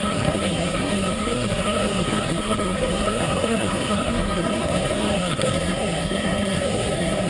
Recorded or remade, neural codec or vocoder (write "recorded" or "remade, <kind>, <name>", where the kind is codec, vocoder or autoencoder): remade, codec, SNAC